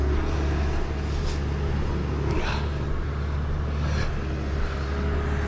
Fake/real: real